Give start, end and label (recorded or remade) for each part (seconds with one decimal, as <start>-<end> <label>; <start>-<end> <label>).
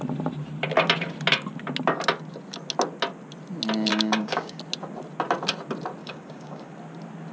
0.0-3.9 recorded; 3.9-4.6 remade; 4.6-6.0 recorded; 6.0-6.7 remade; 6.7-7.3 recorded